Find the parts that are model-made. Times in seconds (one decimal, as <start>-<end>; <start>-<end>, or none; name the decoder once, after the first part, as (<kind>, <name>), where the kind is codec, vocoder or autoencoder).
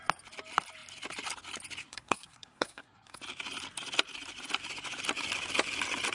1.8-3.2 (codec, SNAC)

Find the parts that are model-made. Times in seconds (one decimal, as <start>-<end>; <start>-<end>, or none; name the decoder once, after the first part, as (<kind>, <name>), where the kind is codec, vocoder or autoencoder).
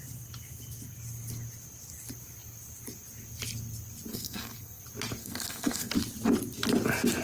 4.1-4.8 (codec, SNAC); 5.2-5.9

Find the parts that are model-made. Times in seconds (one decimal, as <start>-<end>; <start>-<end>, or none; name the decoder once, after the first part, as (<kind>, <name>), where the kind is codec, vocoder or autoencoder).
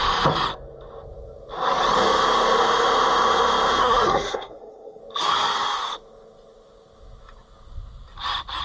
3.8-5.0 (codec, SNAC)